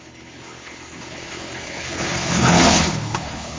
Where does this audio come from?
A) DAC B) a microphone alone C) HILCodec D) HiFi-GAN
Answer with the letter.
C